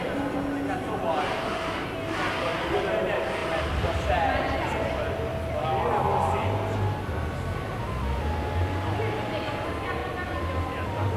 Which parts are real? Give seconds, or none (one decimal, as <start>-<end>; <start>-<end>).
0.0-3.4; 4.7-10.0